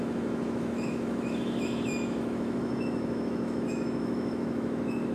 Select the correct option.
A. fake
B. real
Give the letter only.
A